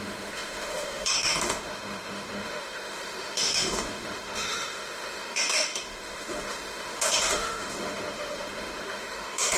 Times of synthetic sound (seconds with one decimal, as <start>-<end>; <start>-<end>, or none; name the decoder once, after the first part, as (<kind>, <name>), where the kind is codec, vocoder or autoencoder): 0.0-9.6 (autoencoder, DAC-VAE)